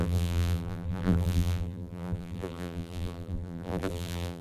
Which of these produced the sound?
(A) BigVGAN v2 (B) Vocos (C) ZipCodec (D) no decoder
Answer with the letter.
A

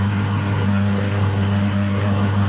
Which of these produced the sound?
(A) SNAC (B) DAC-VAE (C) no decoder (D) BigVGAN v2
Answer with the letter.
A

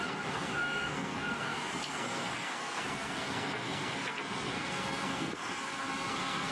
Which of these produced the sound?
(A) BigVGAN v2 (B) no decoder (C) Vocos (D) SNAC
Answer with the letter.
D